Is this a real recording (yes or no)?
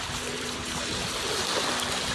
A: yes